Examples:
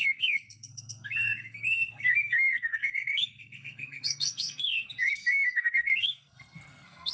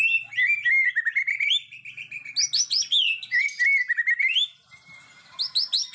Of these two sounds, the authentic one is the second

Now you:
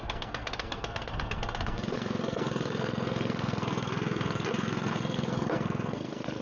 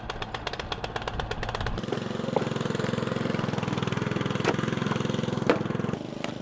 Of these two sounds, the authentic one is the second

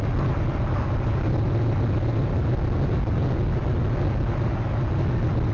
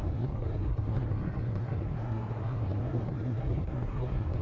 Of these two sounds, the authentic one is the first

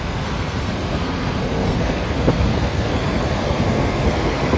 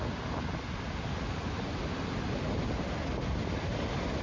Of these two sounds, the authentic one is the second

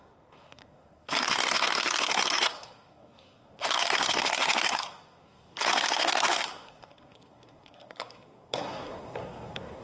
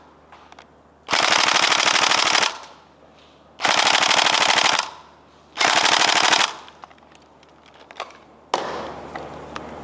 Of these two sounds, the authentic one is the second